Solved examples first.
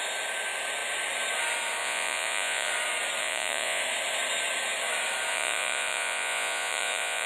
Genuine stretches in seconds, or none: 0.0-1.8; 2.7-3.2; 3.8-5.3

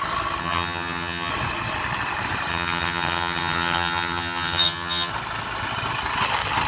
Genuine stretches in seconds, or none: 0.0-0.4; 1.3-2.5; 5.1-6.7

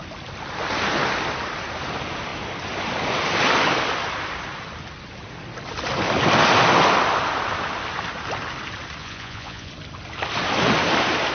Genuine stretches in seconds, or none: 0.0-9.0; 9.7-11.3